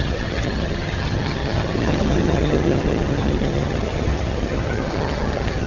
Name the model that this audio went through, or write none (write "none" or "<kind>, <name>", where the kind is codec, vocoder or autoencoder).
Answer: vocoder, HiFi-GAN